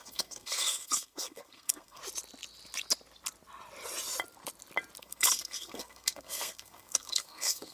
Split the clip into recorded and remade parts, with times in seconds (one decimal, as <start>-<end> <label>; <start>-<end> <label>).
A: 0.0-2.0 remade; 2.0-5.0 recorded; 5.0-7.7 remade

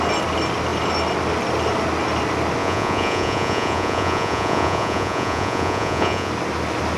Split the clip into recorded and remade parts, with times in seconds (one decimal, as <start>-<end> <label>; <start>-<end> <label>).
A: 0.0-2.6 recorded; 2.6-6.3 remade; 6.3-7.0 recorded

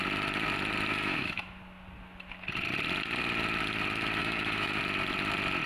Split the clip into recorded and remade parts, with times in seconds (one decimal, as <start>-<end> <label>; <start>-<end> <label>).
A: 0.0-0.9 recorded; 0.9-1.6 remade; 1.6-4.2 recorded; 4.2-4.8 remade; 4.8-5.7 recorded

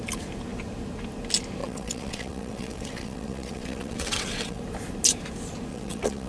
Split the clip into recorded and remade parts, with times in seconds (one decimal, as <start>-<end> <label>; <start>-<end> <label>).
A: 0.0-1.6 recorded; 1.6-4.6 remade; 4.6-5.7 recorded; 5.7-6.3 remade